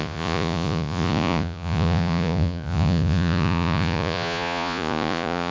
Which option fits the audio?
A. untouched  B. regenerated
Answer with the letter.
B